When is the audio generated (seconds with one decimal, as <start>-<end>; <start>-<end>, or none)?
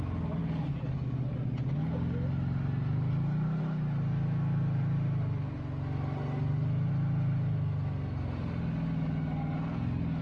none